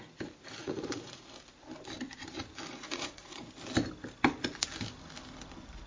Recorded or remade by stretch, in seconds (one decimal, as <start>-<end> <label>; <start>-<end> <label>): 0.0-0.6 recorded; 0.6-1.2 remade; 1.2-2.7 recorded; 2.7-3.5 remade; 3.5-5.9 recorded